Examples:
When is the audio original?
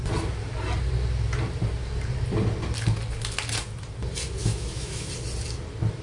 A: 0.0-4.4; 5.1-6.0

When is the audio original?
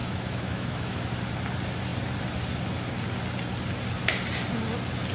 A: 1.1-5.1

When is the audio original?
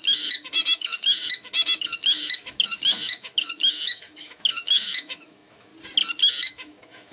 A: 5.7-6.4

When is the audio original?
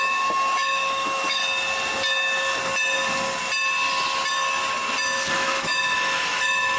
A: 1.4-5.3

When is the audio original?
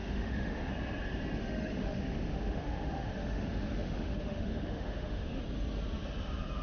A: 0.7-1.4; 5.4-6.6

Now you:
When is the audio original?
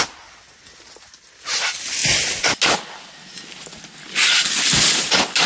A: 0.0-5.5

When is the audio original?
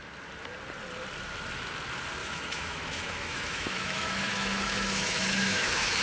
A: 0.0-2.2